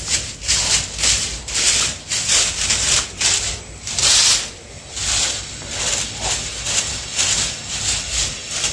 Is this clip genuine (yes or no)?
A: yes